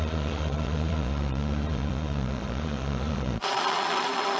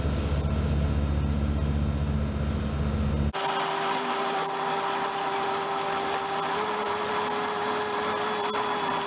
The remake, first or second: first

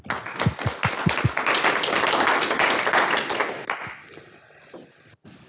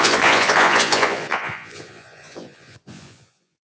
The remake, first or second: second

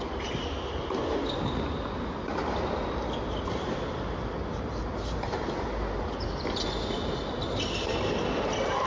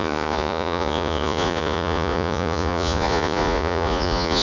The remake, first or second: second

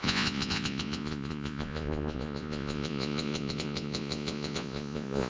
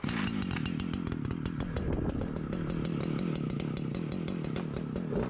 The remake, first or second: first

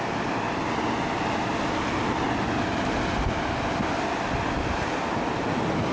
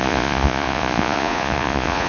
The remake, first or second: second